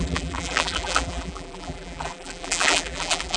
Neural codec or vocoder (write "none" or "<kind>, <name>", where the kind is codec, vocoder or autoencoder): vocoder, BigVGAN v2